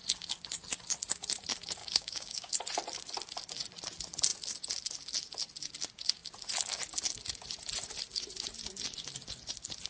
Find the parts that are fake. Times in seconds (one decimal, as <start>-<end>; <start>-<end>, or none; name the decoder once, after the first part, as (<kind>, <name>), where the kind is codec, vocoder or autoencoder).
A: 1.8-2.5 (codec, DAC)